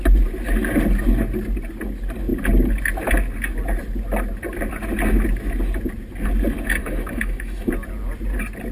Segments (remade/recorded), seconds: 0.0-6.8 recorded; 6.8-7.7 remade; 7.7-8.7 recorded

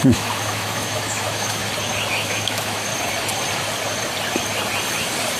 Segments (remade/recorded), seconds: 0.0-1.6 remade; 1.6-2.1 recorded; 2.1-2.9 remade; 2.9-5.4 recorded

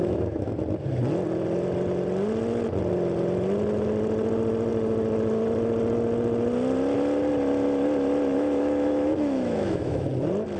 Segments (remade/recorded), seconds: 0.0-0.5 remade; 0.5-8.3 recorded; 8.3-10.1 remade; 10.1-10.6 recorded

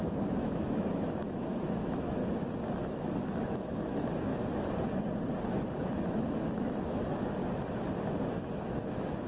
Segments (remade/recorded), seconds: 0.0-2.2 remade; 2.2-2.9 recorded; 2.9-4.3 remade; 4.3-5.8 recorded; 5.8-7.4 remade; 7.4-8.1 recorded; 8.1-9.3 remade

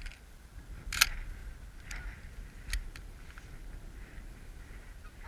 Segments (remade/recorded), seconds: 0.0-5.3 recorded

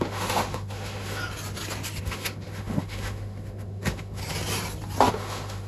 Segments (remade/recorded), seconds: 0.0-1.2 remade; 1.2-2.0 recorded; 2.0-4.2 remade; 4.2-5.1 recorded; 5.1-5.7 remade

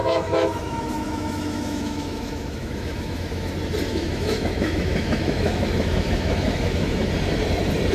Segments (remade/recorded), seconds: 0.0-3.5 remade; 3.5-3.9 recorded; 3.9-7.1 remade; 7.1-7.9 recorded